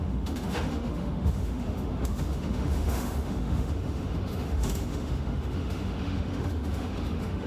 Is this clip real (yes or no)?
no